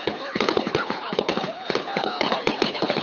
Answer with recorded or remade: remade